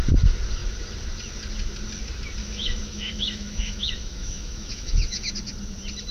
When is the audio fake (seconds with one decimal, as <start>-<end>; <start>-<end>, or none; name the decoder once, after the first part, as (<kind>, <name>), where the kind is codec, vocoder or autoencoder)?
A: 2.4-5.3 (autoencoder, DAC-VAE)

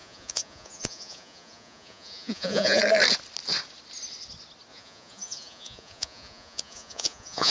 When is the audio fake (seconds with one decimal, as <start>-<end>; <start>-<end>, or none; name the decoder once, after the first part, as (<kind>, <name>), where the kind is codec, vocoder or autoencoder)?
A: 0.0-2.8 (vocoder, Vocos); 4.7-7.5

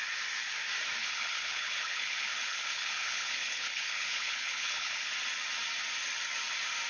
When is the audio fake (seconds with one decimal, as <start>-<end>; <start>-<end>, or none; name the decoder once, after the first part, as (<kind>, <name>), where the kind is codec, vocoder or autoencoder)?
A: 1.0-5.1 (codec, HILCodec)

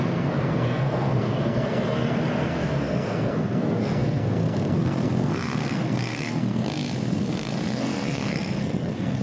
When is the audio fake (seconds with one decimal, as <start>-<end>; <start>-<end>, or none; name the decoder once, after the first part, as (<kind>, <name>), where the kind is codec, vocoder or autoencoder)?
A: 0.0-9.2 (codec, SNAC)

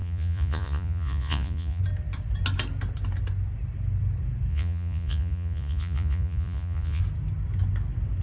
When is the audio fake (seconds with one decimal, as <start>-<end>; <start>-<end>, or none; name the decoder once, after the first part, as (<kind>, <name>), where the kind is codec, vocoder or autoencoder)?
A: 0.0-1.8 (vocoder, Vocos); 4.5-7.0

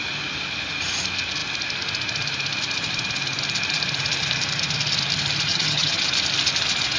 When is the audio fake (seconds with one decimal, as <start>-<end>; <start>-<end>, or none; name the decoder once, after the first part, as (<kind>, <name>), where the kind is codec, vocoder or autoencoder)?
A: 5.5-6.0 (vocoder, HiFi-GAN)